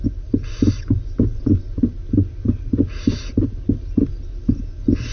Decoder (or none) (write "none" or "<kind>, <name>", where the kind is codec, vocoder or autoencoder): none